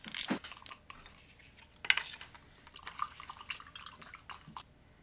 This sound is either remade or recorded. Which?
recorded